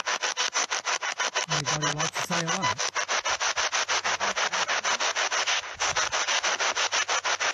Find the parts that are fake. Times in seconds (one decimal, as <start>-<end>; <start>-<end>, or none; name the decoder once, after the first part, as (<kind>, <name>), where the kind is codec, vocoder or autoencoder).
none